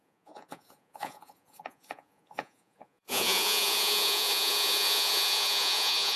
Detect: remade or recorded remade